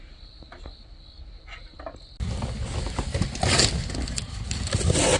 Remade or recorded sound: recorded